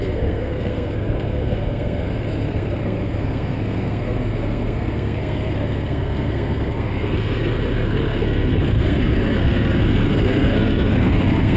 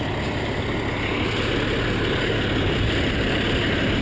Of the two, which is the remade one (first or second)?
first